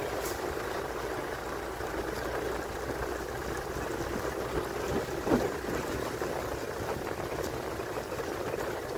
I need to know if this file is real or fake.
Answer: real